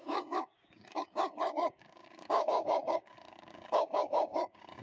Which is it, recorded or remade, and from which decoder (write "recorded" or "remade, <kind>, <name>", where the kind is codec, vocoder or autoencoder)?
remade, codec, DAC